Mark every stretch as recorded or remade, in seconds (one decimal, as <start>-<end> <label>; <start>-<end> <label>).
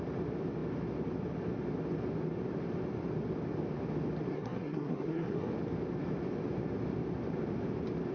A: 0.0-4.3 recorded; 4.3-5.5 remade; 5.5-8.1 recorded